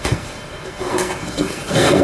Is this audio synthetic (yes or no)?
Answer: yes